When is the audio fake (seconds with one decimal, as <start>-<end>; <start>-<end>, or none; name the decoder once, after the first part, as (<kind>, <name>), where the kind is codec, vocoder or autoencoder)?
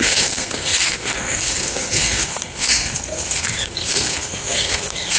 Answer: 0.0-5.2 (codec, SNAC)